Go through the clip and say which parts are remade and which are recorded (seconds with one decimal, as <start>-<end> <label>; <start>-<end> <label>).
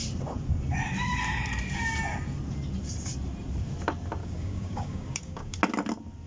0.0-4.2 recorded; 4.2-5.6 remade; 5.6-6.3 recorded